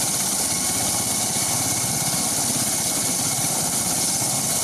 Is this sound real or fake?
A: real